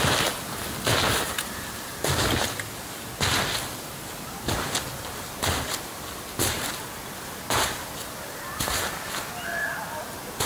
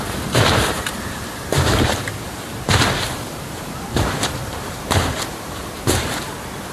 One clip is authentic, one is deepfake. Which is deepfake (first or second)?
second